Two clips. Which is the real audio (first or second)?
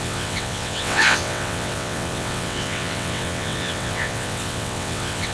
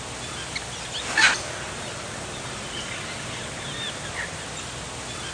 second